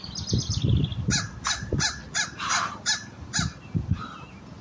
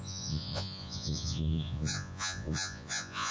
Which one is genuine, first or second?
first